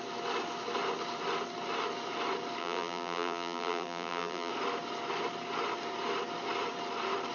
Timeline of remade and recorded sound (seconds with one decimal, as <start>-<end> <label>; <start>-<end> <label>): 0.0-2.6 recorded; 2.6-4.5 remade; 4.5-7.3 recorded

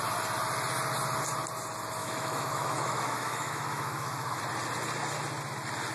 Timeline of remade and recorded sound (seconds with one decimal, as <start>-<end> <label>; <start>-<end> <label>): 0.0-2.0 recorded; 2.0-4.4 remade; 4.4-5.9 recorded

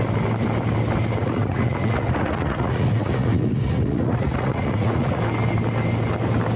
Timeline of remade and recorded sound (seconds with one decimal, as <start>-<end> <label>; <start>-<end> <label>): 0.0-1.2 recorded; 1.2-5.2 remade; 5.2-6.6 recorded

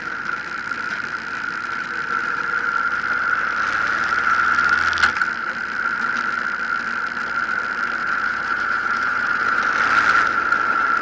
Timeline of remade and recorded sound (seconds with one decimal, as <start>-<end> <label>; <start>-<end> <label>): 0.0-8.0 recorded; 8.0-9.6 remade; 9.6-11.0 recorded

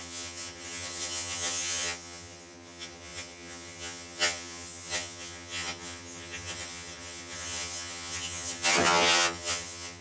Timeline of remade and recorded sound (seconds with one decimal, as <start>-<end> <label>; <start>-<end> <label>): 0.0-10.0 remade